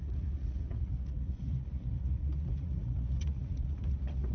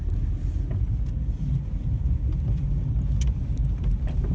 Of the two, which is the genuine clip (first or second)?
second